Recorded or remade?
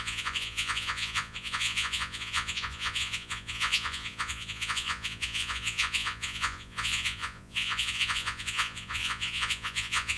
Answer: remade